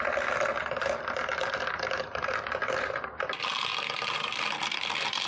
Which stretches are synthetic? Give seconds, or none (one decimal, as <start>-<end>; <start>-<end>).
none